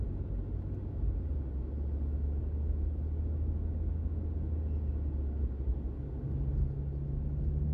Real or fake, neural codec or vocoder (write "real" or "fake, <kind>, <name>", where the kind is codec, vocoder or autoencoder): real